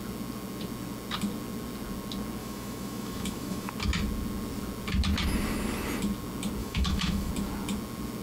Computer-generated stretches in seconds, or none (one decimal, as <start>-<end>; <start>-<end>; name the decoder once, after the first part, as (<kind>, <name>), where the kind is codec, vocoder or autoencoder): 2.4-3.7 (autoencoder, DAC-VAE); 6.6-7.3